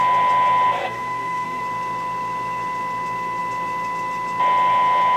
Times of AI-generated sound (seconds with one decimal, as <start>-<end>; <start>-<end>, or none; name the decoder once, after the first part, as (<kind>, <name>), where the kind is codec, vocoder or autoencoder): 0.8-1.6 (codec, SNAC)